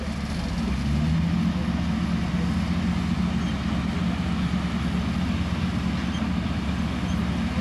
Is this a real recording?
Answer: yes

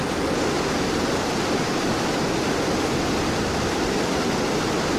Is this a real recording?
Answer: yes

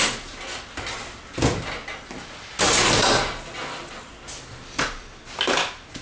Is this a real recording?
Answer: yes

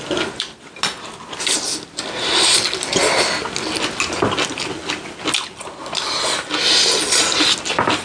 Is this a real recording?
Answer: yes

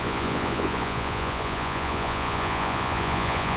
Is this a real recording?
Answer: no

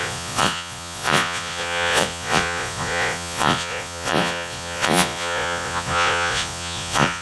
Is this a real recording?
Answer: no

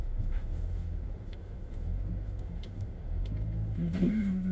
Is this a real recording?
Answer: no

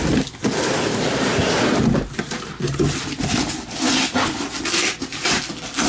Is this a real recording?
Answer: yes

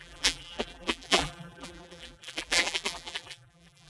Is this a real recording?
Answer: no